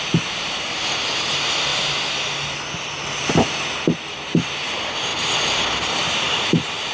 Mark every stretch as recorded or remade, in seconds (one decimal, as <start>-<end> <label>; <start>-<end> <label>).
0.0-6.9 recorded